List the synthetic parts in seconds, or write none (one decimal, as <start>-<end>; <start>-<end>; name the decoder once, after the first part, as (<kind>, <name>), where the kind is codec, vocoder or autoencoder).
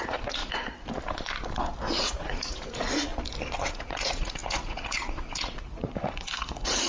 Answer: 0.0-0.4 (vocoder, Vocos); 2.0-3.1; 3.7-6.9